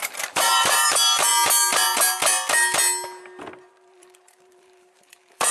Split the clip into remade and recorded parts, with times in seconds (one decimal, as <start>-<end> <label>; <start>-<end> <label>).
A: 0.0-1.3 remade; 1.3-3.7 recorded; 3.7-5.5 remade